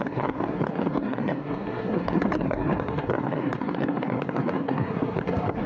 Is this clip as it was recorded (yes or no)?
no